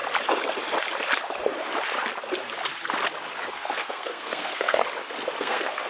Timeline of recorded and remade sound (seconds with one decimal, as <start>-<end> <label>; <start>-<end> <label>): 0.0-3.5 recorded; 3.5-4.8 remade; 4.8-5.4 recorded; 5.4-5.9 remade